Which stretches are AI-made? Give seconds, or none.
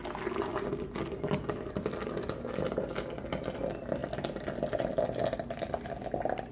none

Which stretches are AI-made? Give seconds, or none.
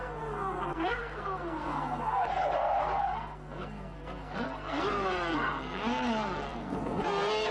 0.0-7.5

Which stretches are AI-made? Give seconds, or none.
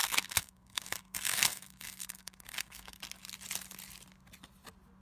0.0-3.0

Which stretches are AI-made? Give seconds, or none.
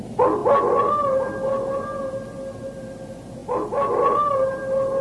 none